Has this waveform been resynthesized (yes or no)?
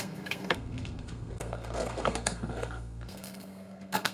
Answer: yes